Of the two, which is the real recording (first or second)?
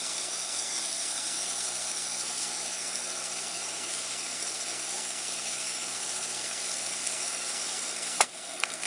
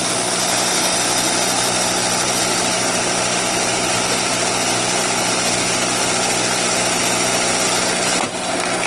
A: second